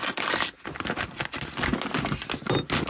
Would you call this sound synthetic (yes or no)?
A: no